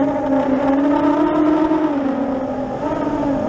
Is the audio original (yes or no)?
yes